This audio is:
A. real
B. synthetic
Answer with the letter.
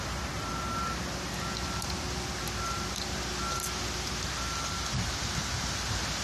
A